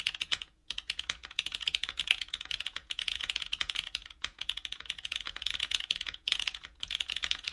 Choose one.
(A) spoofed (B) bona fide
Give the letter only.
A